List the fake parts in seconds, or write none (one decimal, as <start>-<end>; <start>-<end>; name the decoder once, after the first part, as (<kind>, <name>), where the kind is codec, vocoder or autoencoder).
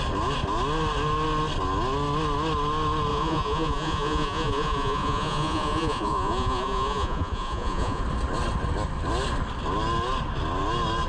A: 3.1-8.0 (vocoder, Vocos)